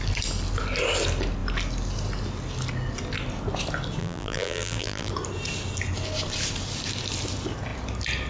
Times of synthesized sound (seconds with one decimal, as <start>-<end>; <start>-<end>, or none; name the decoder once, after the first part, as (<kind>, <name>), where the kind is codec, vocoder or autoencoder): 4.0-5.1 (vocoder, BigVGAN v2)